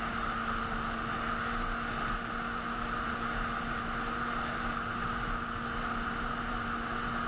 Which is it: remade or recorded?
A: recorded